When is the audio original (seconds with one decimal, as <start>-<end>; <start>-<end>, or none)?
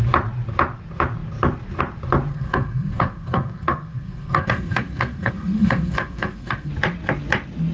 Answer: 0.0-2.3; 6.7-7.7